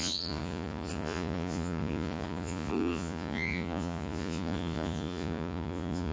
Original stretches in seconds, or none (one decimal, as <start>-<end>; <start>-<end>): none